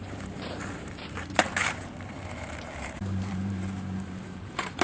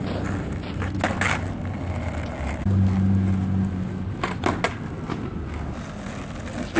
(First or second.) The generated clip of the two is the first